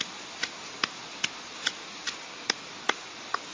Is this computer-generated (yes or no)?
no